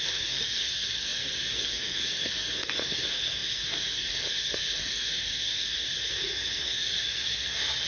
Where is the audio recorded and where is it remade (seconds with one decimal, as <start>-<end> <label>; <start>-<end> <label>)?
0.0-7.9 remade